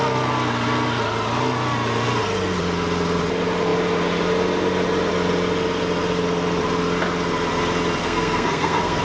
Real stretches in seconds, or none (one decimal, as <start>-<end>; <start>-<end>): 0.0-8.0